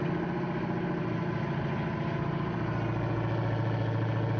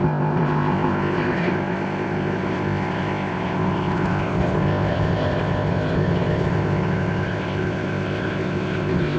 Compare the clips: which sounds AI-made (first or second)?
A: second